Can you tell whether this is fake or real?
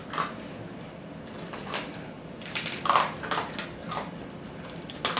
real